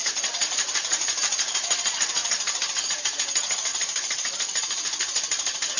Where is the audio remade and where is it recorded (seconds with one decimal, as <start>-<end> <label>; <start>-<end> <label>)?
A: 0.0-3.7 recorded; 3.7-5.8 remade